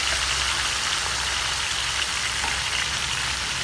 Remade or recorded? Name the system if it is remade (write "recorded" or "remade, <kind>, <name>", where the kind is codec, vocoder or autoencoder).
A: recorded